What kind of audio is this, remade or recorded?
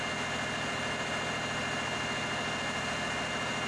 recorded